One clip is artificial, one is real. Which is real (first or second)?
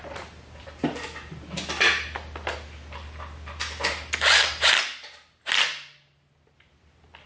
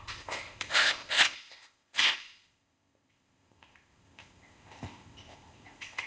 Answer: first